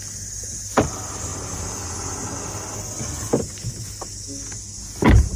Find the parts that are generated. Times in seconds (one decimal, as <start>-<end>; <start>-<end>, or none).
none

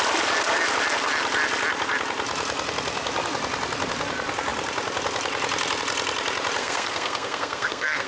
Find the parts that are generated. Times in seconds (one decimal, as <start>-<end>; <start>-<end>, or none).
6.6-8.1

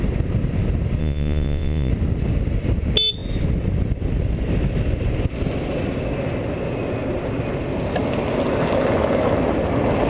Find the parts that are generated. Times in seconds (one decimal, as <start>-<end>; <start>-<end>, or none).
1.0-1.9